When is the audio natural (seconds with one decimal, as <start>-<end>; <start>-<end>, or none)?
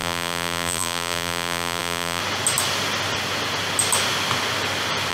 2.2-5.1